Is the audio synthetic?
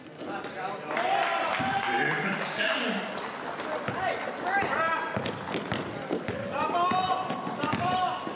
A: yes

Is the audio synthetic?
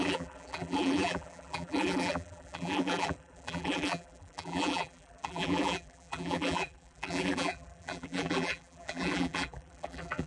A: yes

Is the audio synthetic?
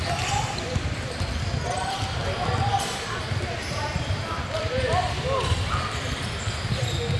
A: yes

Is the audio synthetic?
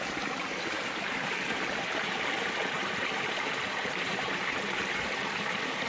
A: yes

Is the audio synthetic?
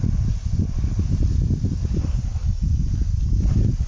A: no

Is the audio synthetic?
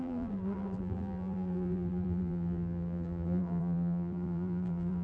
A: yes